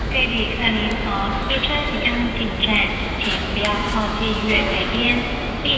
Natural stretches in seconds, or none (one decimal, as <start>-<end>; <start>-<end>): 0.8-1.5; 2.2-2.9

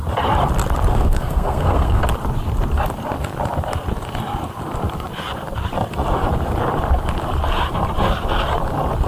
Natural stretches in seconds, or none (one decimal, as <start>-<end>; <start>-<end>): 0.0-0.9; 2.0-9.1

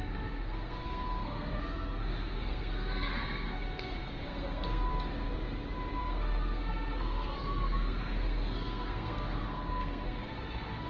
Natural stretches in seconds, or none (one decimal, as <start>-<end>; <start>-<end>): 4.9-6.0

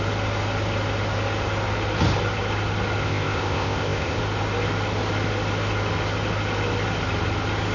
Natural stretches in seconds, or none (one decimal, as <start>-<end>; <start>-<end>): 0.0-3.0; 4.2-7.7

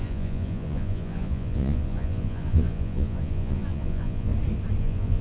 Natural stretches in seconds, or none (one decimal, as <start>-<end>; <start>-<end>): 4.3-4.8